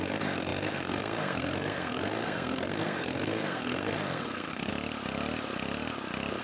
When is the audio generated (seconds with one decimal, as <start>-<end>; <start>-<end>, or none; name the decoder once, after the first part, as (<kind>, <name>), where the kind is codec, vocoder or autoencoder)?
0.0-4.7 (codec, SNAC)